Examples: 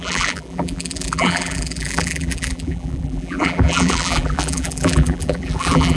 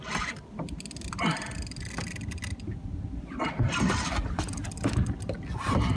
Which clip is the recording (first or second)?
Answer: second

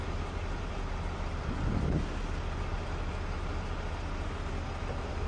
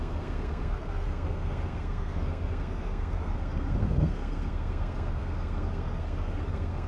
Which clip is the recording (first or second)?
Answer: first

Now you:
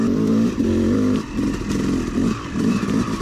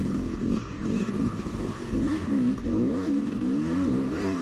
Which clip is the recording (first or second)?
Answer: first